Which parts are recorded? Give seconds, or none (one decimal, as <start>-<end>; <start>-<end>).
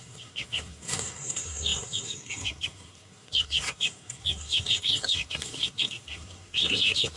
none